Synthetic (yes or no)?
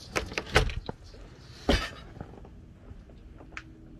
no